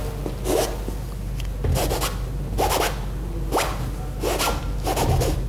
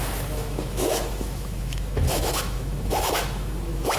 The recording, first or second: first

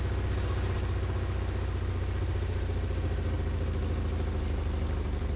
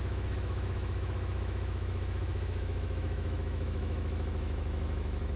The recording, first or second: first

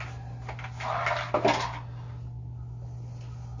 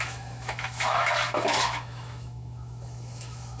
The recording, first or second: first